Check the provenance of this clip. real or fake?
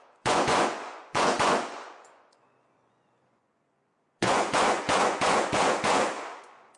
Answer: fake